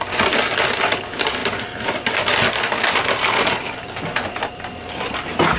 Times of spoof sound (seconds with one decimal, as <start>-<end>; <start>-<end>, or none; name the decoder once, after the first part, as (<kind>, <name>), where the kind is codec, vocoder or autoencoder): none